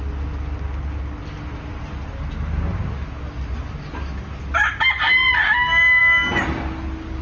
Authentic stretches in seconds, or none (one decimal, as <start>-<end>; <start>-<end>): 0.0-7.2

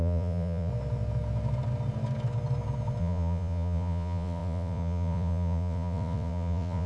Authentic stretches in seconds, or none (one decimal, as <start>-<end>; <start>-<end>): 0.7-3.0

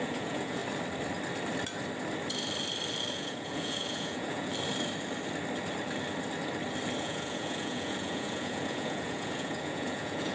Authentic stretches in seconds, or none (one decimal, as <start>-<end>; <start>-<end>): 0.6-3.1; 4.5-7.0

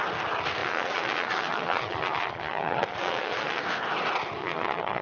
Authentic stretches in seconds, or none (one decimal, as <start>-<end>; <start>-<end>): 0.0-0.6; 3.6-4.4

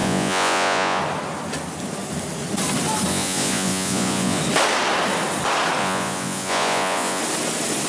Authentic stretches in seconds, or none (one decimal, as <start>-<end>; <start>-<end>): 1.0-3.1; 4.4-5.8; 7.2-7.9